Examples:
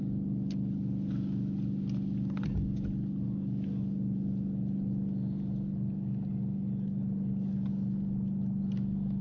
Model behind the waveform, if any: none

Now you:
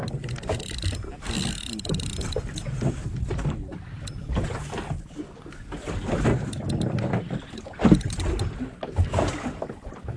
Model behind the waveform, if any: none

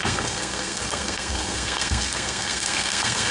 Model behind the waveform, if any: codec, SNAC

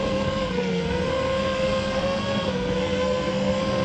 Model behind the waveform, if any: codec, SNAC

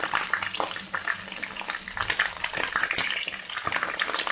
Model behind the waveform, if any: none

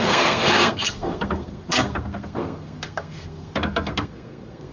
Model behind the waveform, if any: codec, SNAC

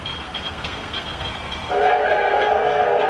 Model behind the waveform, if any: codec, SNAC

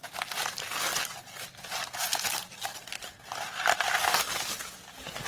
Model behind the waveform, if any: none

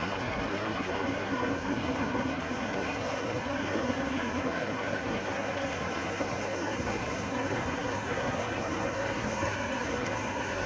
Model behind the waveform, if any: codec, SNAC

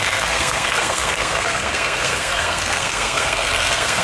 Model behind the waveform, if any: codec, SNAC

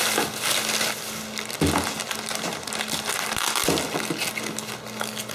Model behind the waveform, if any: none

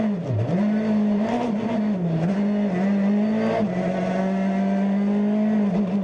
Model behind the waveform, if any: none